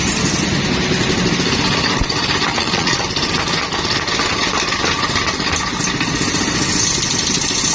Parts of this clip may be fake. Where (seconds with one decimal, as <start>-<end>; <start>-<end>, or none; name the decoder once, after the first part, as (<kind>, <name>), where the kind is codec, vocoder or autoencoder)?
2.5-3.0 (vocoder, Vocos)